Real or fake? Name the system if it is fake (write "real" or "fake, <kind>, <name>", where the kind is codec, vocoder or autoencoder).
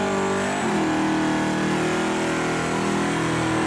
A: real